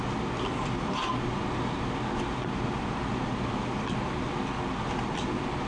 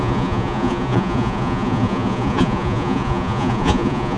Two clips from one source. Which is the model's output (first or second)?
second